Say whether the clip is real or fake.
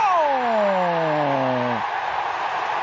real